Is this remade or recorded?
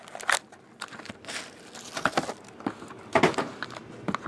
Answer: recorded